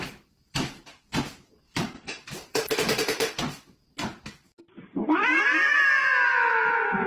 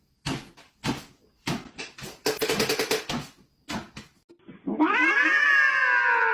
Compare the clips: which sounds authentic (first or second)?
second